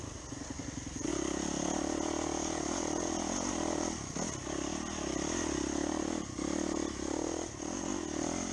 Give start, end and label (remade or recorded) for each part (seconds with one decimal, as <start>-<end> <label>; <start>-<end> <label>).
0.0-8.5 recorded